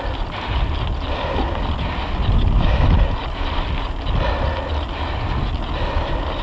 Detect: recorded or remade recorded